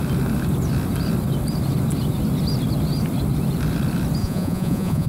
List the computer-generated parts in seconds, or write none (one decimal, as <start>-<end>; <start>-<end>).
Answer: 4.2-5.1

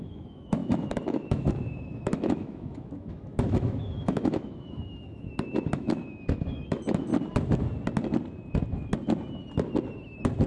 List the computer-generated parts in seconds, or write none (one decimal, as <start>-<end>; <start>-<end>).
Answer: 0.0-7.1

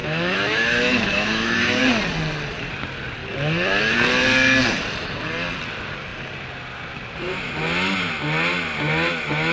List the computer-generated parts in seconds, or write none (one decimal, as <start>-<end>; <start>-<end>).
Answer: 0.0-1.8

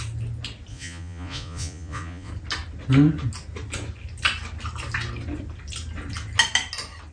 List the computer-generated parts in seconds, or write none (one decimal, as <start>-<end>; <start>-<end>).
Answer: 0.7-2.3

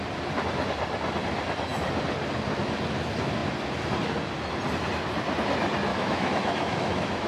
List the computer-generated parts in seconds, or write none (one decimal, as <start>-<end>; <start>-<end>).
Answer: 5.9-7.3

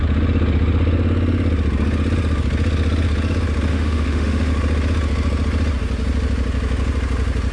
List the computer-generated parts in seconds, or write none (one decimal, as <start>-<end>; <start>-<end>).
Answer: 3.7-4.5

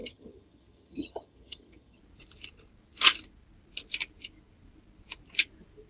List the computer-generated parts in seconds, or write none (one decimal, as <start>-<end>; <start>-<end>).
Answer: 0.0-2.0

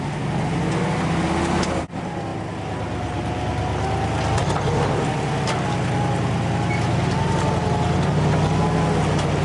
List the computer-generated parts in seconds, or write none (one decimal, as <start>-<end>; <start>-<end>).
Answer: none